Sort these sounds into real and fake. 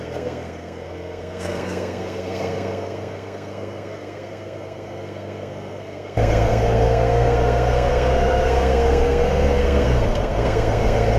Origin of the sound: fake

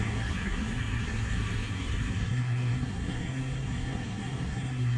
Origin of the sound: fake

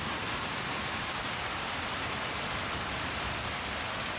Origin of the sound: real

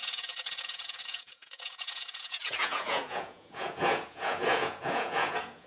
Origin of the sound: fake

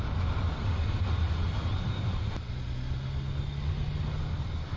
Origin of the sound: real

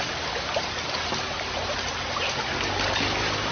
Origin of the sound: real